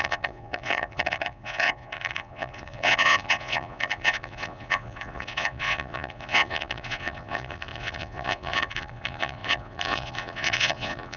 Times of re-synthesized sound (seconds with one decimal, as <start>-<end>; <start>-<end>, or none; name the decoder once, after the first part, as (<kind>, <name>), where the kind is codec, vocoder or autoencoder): 0.0-11.2 (vocoder, Vocos)